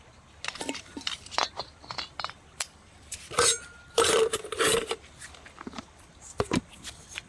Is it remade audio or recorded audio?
recorded